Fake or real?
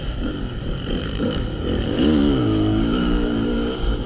fake